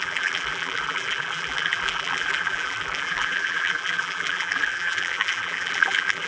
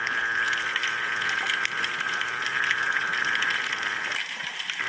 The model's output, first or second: first